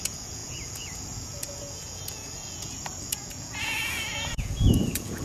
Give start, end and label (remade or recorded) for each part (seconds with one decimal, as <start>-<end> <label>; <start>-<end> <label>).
0.0-5.2 remade